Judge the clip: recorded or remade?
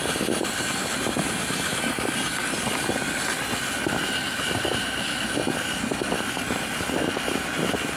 recorded